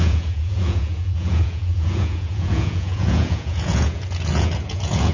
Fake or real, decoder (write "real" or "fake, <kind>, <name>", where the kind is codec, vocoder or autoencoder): fake, vocoder, Vocos